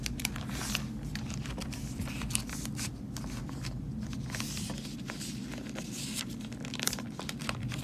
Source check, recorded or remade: remade